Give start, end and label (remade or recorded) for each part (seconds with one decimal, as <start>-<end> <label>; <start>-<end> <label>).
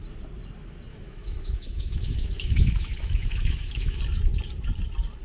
0.0-0.9 recorded; 0.9-4.0 remade; 4.0-5.2 recorded